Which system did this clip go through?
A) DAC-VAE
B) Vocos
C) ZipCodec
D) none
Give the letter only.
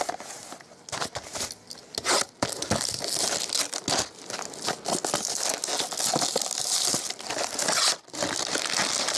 D